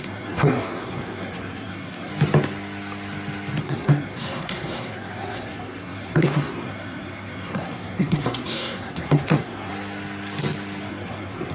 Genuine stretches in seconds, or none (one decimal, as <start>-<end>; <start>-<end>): 2.1-3.6; 9.7-10.9